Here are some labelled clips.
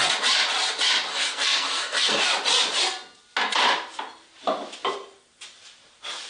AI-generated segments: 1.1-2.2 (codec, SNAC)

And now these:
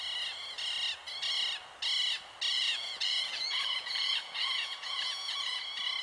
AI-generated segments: 2.5-5.6 (vocoder, Vocos)

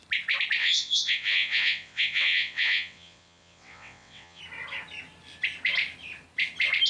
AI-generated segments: 0.6-4.4 (vocoder, WaveNeXt)

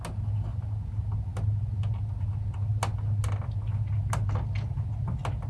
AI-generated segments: none